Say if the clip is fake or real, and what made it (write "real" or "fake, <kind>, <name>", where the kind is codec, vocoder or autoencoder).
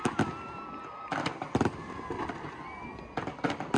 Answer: real